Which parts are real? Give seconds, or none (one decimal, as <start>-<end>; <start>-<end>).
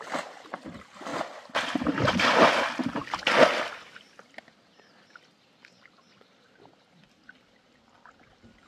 0.0-8.7